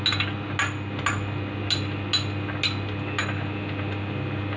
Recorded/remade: recorded